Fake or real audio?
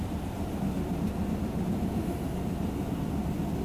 real